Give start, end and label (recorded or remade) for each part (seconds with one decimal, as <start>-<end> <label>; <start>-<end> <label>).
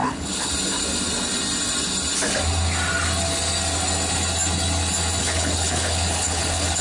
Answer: 0.0-0.5 remade; 0.5-5.2 recorded; 5.2-6.8 remade